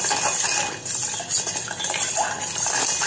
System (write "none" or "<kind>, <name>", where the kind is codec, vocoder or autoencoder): none